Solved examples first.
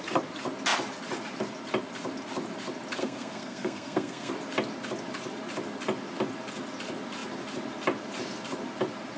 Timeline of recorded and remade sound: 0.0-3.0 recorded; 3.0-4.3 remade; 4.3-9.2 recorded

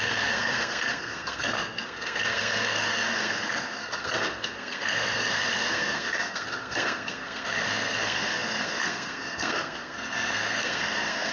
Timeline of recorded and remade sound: 0.0-11.3 remade

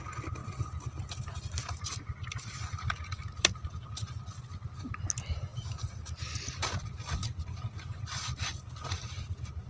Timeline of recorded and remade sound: 0.0-9.7 recorded